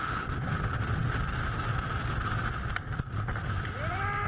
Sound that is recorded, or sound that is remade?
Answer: recorded